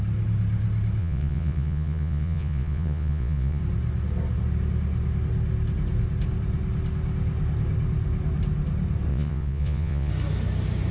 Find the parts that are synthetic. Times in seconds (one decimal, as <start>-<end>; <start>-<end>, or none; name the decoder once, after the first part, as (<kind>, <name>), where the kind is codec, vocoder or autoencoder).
1.0-3.6 (vocoder, Vocos); 9.1-10.1